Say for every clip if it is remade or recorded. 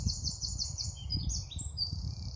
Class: remade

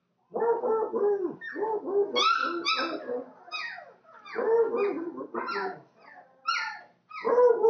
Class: recorded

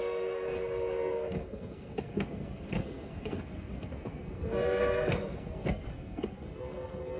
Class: remade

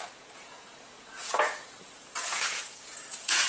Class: remade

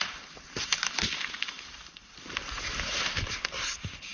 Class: remade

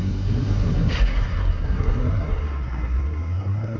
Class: remade